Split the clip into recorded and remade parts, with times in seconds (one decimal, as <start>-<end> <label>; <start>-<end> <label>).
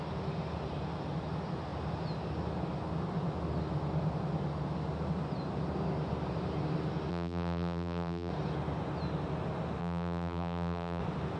0.0-7.1 recorded; 7.1-8.3 remade; 8.3-9.8 recorded; 9.8-11.0 remade; 11.0-11.4 recorded